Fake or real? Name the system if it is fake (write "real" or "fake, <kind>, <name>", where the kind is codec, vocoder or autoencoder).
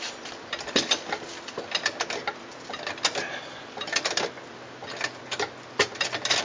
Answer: real